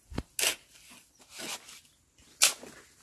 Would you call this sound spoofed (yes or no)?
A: no